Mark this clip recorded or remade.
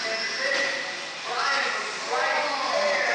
recorded